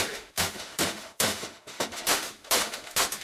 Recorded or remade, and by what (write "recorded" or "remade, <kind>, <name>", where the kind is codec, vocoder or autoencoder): remade, autoencoder, DAC-VAE